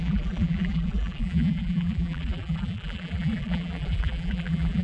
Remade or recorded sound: remade